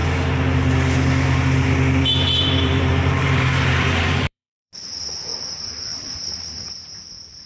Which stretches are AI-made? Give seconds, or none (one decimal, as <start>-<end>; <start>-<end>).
2.0-4.7; 5.4-7.5